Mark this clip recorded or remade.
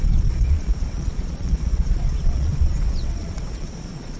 remade